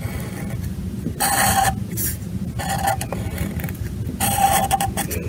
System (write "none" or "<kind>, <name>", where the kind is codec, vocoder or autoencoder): none